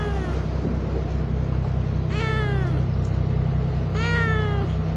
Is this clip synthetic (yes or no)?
no